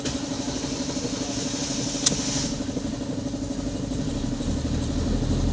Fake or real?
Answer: real